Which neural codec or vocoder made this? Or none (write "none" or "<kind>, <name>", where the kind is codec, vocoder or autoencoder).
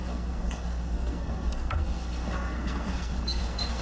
codec, SNAC